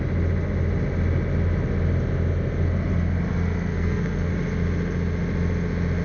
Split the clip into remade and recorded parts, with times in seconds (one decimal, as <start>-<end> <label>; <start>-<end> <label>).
0.0-3.7 recorded; 3.7-4.3 remade; 4.3-6.0 recorded